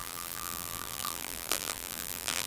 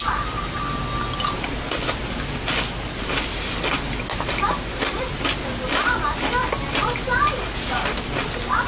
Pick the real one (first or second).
second